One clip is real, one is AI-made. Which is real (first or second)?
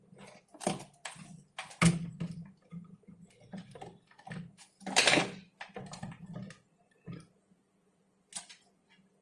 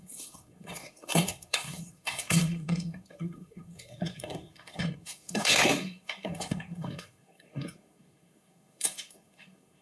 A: first